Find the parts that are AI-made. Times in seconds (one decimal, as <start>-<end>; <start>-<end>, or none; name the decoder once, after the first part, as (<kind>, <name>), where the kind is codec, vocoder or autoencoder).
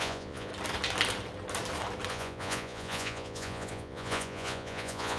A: 0.0-0.5 (vocoder, Vocos); 2.1-5.2